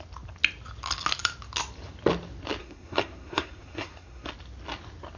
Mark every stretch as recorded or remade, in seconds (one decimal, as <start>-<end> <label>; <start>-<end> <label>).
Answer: 0.0-2.6 recorded; 2.6-4.3 remade; 4.3-5.2 recorded